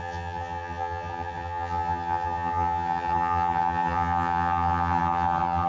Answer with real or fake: fake